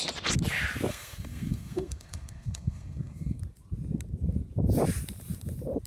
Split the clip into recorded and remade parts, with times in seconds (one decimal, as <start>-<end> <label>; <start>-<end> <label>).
0.0-0.9 recorded; 0.9-3.4 remade; 3.4-5.9 recorded